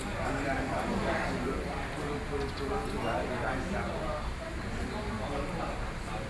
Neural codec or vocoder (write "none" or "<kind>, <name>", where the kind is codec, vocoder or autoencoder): none